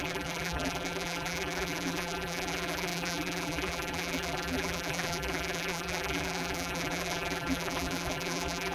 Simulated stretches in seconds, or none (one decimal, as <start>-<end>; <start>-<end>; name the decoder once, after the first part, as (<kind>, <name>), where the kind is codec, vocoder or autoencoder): 0.0-8.7 (vocoder, BigVGAN v2)